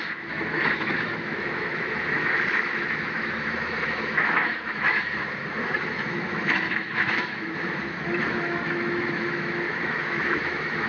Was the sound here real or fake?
fake